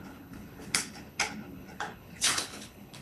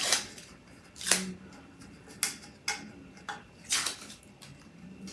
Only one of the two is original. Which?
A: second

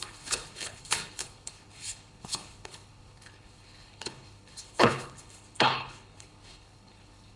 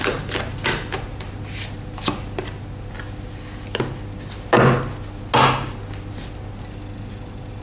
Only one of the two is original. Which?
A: second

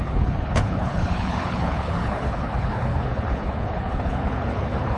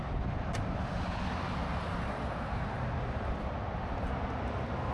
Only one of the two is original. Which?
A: second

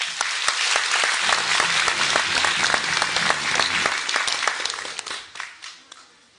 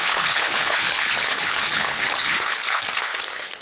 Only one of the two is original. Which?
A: first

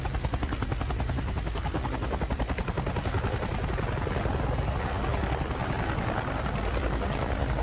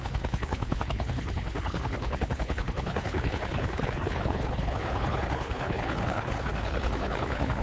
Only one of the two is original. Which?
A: first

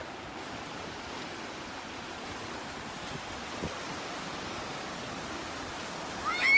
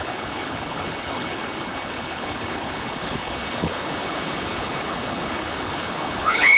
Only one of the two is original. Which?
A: first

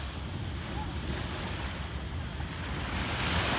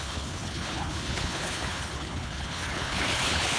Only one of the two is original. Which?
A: first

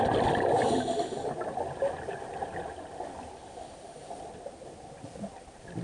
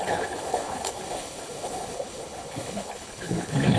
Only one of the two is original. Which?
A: first